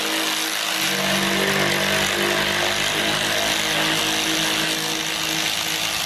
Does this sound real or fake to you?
real